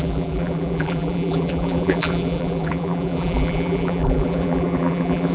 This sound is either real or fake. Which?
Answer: fake